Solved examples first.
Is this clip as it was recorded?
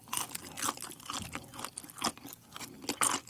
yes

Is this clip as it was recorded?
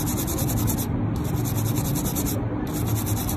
yes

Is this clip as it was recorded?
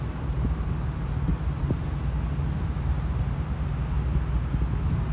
yes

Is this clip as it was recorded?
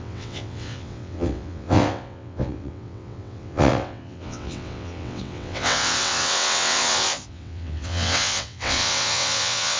no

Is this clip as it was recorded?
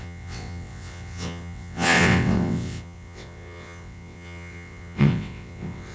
no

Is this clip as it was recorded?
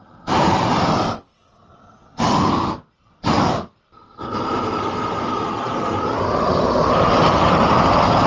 no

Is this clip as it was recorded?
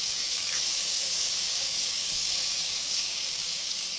no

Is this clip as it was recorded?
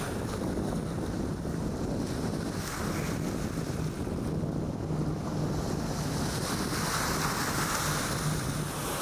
yes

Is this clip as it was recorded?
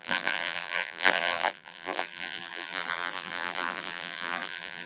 no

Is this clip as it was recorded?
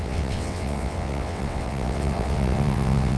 no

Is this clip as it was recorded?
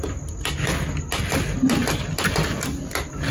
yes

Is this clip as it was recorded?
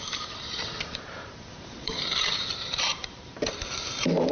no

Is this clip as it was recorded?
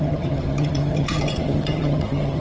no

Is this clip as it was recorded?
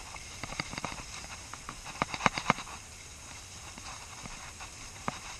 no